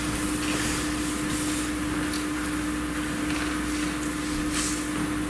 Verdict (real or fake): real